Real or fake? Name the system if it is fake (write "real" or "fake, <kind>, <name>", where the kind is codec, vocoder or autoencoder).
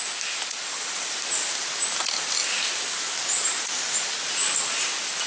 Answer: real